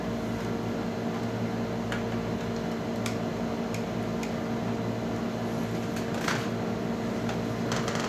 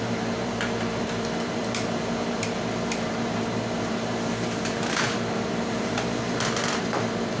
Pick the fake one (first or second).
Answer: second